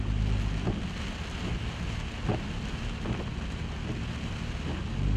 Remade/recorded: recorded